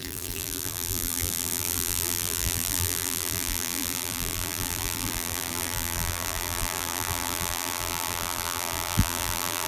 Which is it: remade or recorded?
remade